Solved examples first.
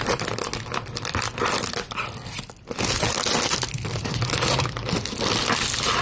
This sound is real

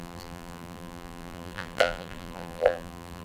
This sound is fake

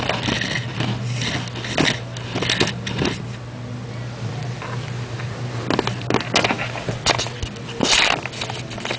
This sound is real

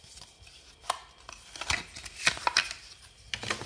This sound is real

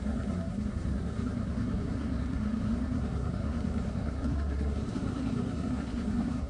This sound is fake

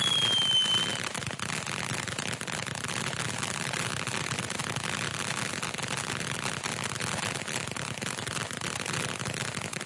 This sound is real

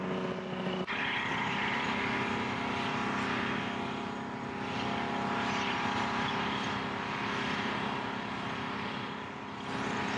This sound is real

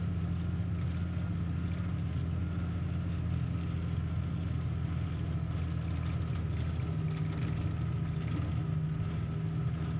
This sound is real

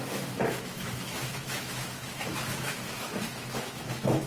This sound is fake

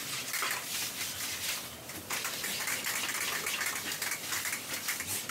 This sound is real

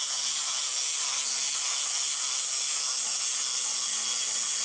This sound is real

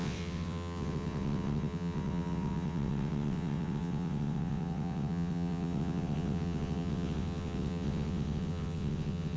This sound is fake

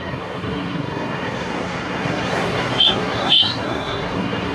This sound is fake